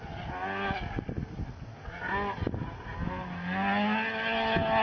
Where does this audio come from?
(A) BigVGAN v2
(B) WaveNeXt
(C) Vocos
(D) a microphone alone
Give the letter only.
D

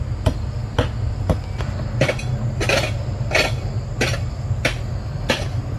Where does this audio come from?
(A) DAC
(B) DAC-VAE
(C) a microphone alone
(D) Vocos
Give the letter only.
C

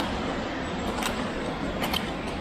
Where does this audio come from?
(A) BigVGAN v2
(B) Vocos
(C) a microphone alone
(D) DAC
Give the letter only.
C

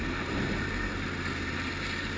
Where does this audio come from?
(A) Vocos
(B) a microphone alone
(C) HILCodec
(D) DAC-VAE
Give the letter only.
B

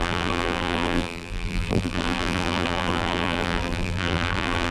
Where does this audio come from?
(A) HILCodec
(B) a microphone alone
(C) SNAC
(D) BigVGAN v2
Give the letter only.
D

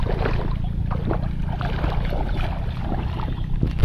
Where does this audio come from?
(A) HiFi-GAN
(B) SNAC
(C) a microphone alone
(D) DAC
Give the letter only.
C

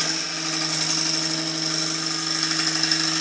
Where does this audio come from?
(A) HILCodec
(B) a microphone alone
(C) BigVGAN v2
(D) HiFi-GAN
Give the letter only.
B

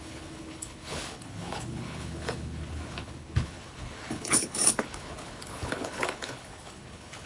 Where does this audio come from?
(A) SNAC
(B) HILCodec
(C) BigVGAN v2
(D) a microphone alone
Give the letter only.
B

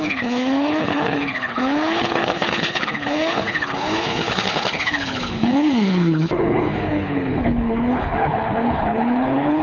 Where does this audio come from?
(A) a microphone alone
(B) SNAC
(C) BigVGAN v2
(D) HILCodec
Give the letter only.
D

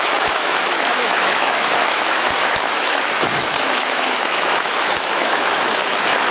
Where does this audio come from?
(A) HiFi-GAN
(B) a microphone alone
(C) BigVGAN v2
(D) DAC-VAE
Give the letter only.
D